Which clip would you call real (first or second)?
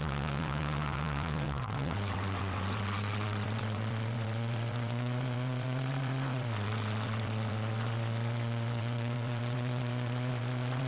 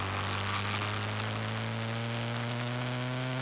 second